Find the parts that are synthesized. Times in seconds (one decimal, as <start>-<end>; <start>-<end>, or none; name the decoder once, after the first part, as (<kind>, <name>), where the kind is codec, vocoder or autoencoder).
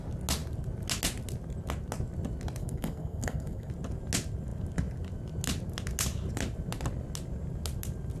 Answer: 2.6-3.7 (codec, SNAC)